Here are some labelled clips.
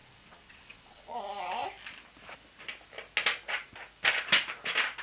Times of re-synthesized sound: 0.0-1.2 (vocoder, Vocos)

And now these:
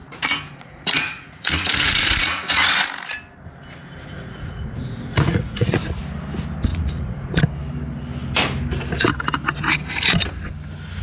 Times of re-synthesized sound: 0.0-2.7 (vocoder, Vocos); 4.1-6.0; 6.7-7.4

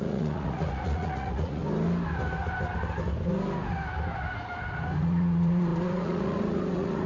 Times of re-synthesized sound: 0.0-1.6 (vocoder, Vocos); 5.0-7.1

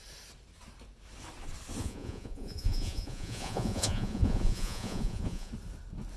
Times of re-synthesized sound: 1.8-5.5 (vocoder, Vocos)

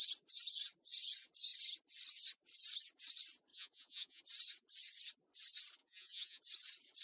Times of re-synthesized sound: 3.5-4.2 (vocoder, Vocos); 5.8-6.4

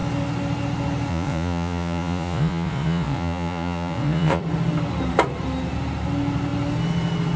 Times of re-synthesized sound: 1.1-4.4 (vocoder, Vocos)

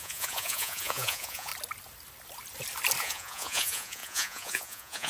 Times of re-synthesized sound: 0.0-1.5 (vocoder, Vocos); 3.0-5.1

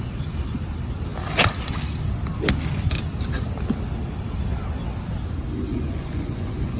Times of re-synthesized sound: 5.7-6.8 (vocoder, Vocos)